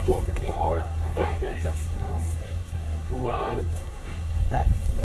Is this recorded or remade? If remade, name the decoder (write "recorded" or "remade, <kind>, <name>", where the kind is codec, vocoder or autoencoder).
remade, codec, SNAC